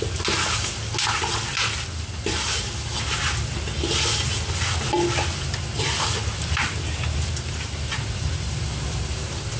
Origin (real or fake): real